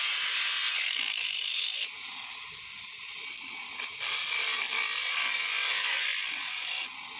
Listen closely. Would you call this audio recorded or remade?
recorded